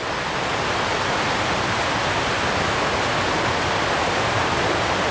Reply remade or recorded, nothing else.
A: recorded